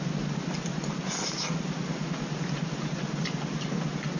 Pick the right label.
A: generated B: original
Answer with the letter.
B